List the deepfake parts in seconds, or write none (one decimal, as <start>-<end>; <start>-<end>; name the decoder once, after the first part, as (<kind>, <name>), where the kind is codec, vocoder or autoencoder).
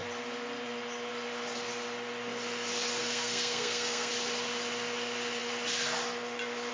3.0-4.1 (codec, SNAC)